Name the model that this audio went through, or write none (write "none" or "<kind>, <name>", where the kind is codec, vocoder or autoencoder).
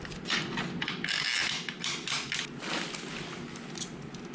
none